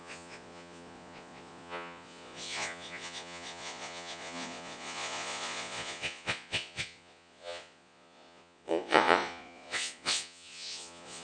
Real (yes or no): no